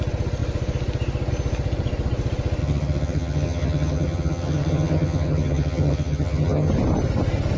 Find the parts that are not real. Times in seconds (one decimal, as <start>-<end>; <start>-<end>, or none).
2.6-6.7